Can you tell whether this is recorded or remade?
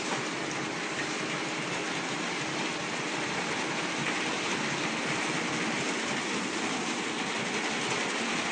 recorded